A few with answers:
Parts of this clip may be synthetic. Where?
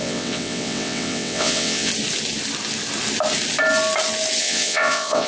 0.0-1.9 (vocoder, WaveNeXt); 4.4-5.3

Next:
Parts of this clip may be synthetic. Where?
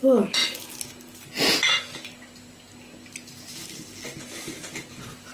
none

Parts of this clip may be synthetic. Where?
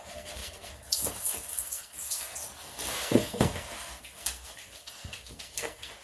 0.0-6.0 (codec, SNAC)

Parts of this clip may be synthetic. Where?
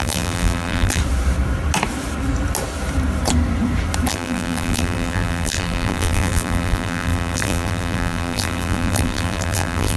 0.0-1.0 (vocoder, BigVGAN v2); 4.1-10.0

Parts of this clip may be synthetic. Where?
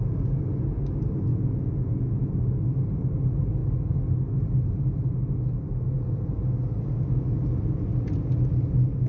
1.3-2.3 (vocoder, Vocos)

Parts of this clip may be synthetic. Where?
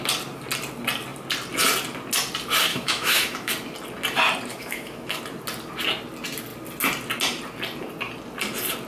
2.7-3.5 (autoencoder, DAC-VAE); 4.5-5.2